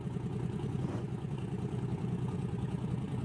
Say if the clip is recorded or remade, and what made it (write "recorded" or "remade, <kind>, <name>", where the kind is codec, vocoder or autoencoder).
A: remade, vocoder, Vocos